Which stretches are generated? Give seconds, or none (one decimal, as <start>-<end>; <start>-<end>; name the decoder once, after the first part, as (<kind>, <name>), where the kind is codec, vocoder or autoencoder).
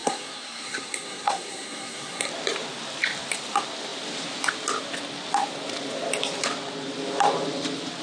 0.0-2.3 (codec, SNAC)